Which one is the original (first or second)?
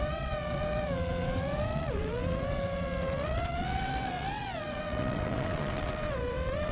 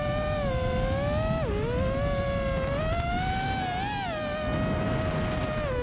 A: second